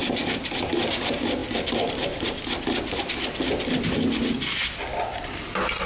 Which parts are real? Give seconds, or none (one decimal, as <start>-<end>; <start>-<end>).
0.0-5.9